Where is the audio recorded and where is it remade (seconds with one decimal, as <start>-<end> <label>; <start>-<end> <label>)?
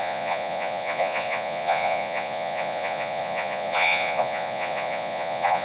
0.0-5.6 remade